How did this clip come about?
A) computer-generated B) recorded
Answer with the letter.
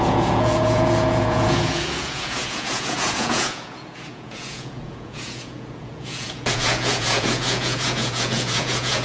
A